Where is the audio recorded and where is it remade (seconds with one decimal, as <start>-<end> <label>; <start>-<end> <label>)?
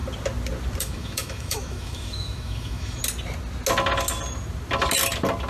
0.0-0.8 recorded; 0.8-3.0 remade; 3.0-5.5 recorded